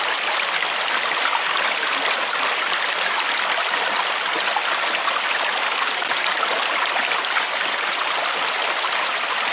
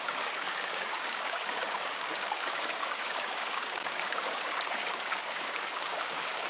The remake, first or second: second